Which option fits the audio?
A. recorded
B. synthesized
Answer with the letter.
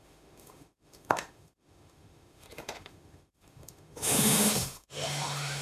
B